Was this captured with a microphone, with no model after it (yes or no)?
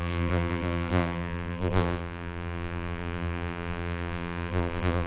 no